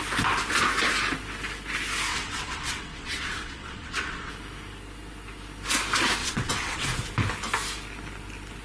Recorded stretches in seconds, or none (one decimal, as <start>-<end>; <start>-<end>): 0.0-2.1; 4.3-6.2; 6.9-8.6